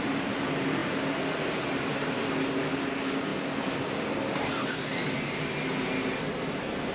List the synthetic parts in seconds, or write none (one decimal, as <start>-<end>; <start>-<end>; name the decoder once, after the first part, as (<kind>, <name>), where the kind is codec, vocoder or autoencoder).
none